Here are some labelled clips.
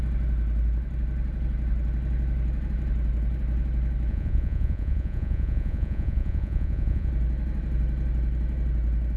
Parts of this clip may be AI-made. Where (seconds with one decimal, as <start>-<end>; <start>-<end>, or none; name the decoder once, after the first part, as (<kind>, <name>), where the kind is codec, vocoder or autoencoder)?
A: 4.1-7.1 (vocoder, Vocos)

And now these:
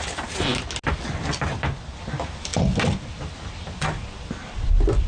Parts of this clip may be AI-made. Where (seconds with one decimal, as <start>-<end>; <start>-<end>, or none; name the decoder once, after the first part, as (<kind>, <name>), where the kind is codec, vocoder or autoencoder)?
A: none

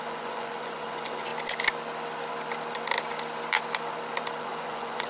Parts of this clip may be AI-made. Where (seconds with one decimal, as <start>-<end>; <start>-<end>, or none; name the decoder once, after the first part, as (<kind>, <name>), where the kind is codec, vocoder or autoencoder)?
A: 0.0-1.3 (vocoder, Vocos); 4.4-5.1